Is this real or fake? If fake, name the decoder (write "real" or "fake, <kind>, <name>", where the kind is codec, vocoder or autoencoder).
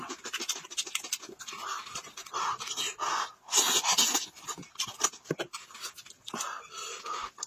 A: real